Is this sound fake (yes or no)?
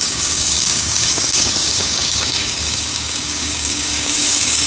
yes